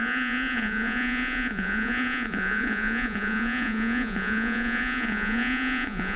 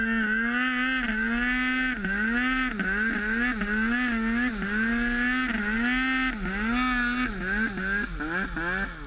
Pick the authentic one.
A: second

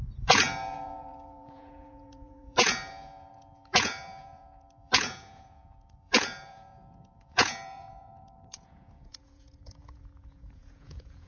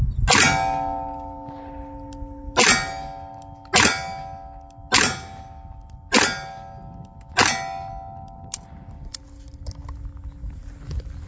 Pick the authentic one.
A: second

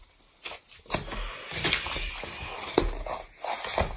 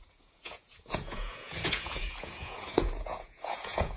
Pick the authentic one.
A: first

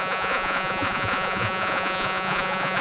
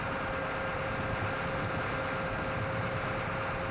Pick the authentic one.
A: second